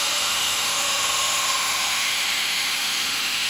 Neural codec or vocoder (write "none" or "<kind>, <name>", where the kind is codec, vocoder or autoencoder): autoencoder, DAC-VAE